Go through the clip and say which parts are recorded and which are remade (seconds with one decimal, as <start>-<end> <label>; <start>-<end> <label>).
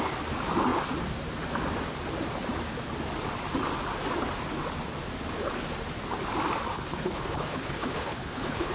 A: 0.0-6.7 recorded; 6.7-8.7 remade